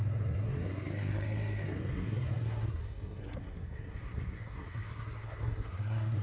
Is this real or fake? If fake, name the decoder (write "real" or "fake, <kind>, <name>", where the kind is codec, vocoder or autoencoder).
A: fake, codec, SNAC